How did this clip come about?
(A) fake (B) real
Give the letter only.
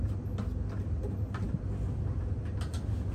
B